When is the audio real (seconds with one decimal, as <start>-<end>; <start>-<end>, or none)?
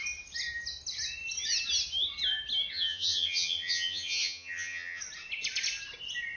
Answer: 0.0-2.7; 5.0-6.4